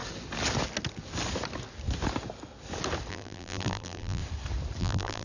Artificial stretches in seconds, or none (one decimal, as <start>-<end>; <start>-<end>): 3.1-4.2; 4.8-5.2